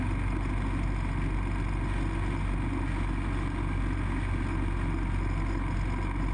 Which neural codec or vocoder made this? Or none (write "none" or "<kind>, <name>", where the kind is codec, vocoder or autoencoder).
none